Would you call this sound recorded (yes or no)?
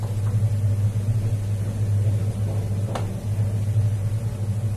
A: yes